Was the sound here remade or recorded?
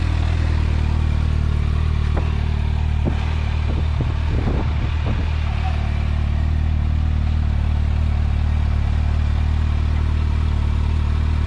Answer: recorded